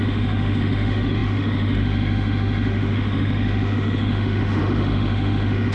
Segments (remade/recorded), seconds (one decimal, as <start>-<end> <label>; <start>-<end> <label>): 0.0-5.7 remade